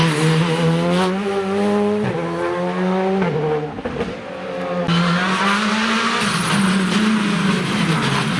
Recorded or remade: recorded